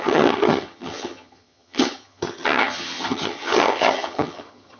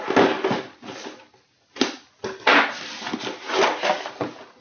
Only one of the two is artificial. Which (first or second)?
first